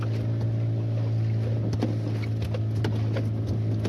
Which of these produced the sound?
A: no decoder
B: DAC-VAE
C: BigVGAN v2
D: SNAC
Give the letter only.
A